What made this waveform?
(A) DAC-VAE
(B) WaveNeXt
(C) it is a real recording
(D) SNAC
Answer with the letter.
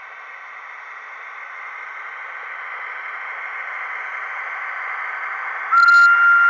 C